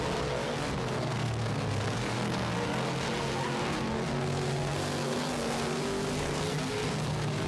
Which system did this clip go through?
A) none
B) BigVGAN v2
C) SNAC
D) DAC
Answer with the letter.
C